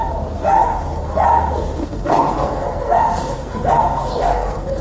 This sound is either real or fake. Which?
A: fake